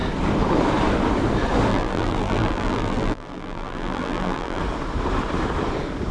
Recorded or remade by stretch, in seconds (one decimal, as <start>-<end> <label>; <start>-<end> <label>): 0.0-1.7 recorded; 1.7-4.6 remade; 4.6-6.1 recorded